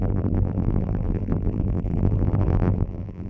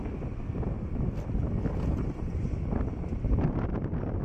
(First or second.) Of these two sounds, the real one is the second